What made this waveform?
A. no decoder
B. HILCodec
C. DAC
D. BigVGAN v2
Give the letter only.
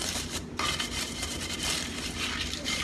A